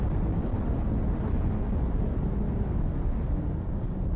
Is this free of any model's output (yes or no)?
yes